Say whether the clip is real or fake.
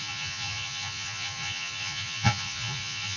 fake